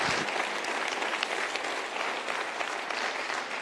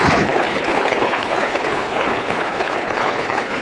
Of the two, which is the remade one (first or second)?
second